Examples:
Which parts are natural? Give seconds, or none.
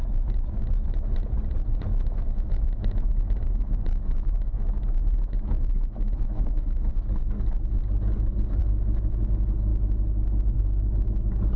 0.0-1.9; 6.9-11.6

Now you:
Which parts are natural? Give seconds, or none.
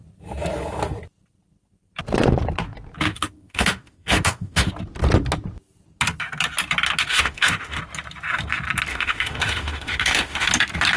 0.0-3.1; 4.7-7.1; 7.8-8.9; 10.5-11.0